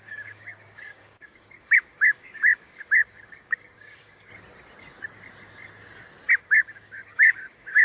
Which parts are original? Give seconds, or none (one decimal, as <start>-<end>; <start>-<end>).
4.3-6.3